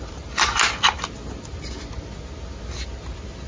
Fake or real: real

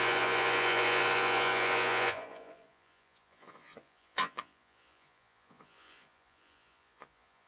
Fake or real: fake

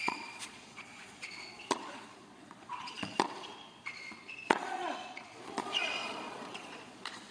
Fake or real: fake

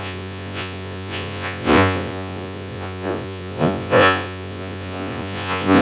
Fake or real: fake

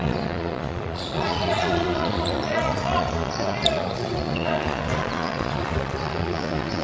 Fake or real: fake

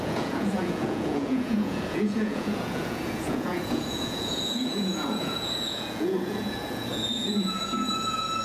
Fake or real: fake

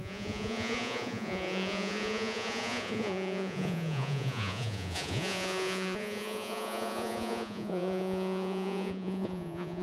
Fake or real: fake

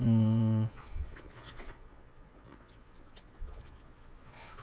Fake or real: fake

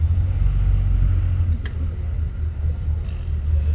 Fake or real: real